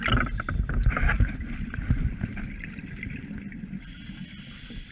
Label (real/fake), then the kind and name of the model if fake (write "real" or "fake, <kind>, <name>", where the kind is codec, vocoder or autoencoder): real